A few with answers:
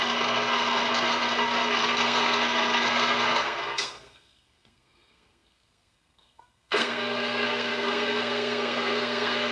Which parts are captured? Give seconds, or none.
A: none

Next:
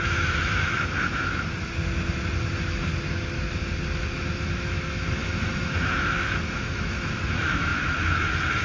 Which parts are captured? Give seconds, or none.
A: 1.3-2.5; 2.9-4.3

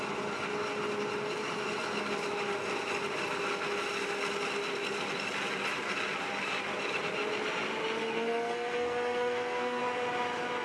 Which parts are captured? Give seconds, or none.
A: 0.0-8.0; 9.8-10.6

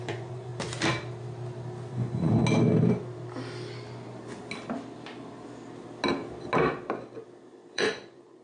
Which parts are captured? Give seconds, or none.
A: 0.5-1.9; 2.4-7.4

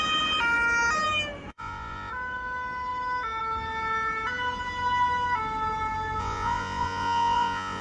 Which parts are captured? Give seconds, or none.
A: 0.0-1.5; 2.1-6.2